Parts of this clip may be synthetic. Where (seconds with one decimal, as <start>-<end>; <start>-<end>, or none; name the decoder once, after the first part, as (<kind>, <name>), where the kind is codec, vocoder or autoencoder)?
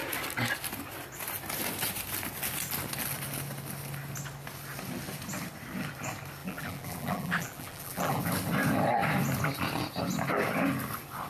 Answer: 6.4-8.2 (vocoder, BigVGAN v2)